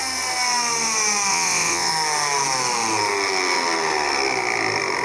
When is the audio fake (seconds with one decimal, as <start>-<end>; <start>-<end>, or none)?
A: 1.3-1.9